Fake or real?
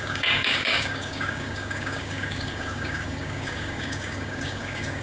fake